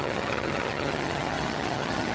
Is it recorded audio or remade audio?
remade